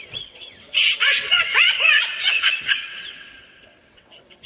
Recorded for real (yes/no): no